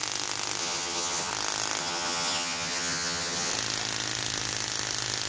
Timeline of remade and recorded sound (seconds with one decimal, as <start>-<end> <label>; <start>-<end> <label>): 0.0-0.6 recorded; 0.6-1.3 remade; 1.3-1.8 recorded; 1.8-3.5 remade; 3.5-5.3 recorded